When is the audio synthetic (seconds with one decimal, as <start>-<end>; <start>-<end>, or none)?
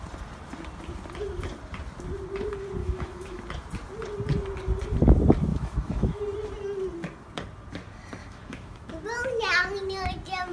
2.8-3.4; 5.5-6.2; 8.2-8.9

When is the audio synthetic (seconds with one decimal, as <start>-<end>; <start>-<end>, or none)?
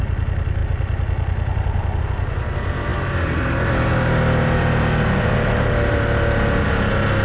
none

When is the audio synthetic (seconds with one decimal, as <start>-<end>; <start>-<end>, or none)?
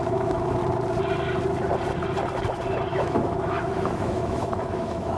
0.0-0.6; 2.9-5.2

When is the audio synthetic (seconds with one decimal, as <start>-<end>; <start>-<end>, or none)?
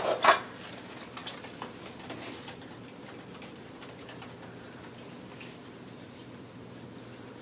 none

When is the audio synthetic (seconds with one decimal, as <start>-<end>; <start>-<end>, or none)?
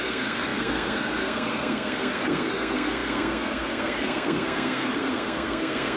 0.0-6.0